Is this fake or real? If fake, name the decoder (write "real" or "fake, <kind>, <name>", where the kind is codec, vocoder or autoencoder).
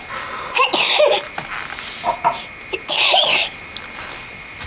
real